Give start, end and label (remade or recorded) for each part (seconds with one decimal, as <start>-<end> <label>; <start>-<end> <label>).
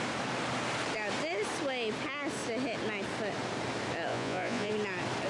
0.0-4.1 recorded; 4.1-4.7 remade; 4.7-5.3 recorded